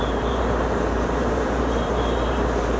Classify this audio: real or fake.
fake